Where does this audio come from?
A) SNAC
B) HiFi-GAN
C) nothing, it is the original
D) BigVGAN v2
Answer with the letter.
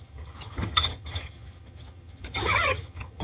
B